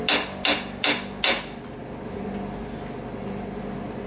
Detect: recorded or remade recorded